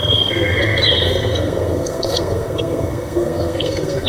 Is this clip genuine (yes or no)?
no